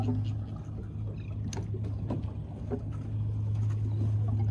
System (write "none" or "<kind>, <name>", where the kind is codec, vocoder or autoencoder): none